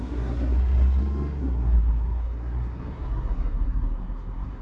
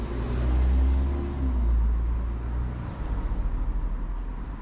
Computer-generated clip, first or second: first